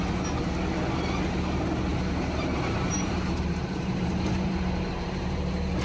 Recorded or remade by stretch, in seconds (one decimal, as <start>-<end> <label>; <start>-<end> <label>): 0.0-1.9 recorded; 1.9-5.8 remade

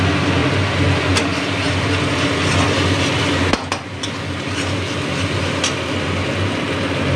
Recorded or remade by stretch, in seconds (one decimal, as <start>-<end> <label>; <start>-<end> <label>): 0.0-7.2 recorded

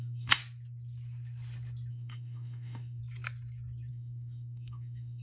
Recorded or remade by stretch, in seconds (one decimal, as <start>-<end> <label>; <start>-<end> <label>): 0.0-0.4 remade; 0.4-1.9 recorded; 1.9-3.0 remade; 3.0-3.9 recorded; 3.9-5.2 remade

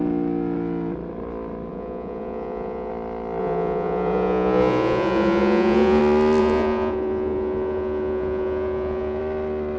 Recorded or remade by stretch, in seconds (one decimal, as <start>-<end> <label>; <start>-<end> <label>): 0.0-1.7 recorded; 1.7-2.9 remade; 2.9-3.4 recorded; 3.4-6.0 remade; 6.0-6.4 recorded; 6.4-9.2 remade; 9.2-9.8 recorded